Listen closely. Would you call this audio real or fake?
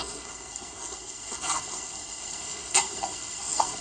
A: fake